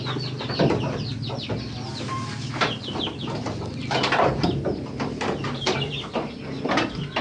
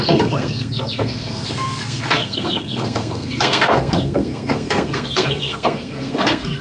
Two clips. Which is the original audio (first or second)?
first